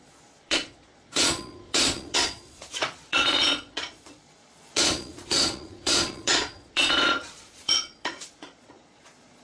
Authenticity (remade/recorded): remade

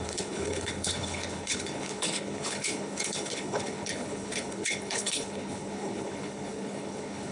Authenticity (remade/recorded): remade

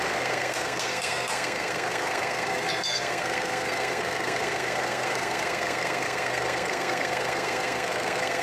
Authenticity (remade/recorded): remade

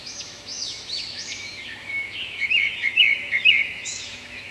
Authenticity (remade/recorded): remade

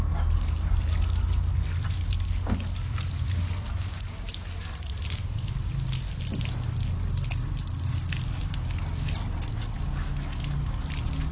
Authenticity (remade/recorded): recorded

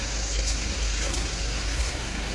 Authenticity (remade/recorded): remade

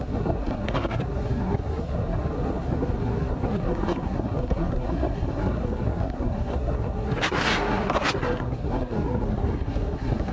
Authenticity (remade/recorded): remade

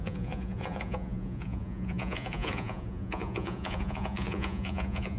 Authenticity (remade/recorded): remade